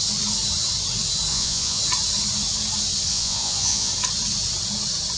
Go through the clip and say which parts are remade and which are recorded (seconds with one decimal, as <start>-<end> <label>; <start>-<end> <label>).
0.0-1.3 recorded; 1.3-1.8 remade; 1.8-3.1 recorded; 3.1-3.9 remade; 3.9-5.2 recorded